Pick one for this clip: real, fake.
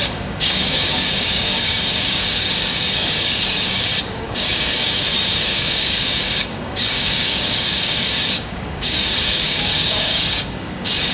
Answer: fake